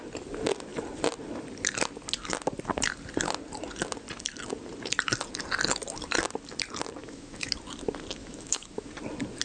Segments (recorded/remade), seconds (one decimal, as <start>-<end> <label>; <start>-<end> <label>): 0.0-7.0 recorded; 7.0-7.5 remade; 7.5-8.2 recorded; 8.2-8.9 remade; 8.9-9.4 recorded